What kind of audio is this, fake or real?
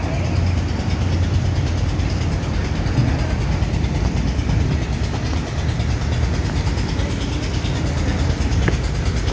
real